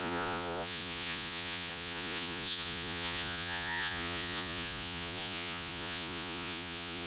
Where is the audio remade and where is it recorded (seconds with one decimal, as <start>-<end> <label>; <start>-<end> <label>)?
0.0-7.1 remade